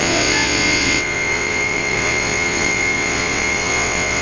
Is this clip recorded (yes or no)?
no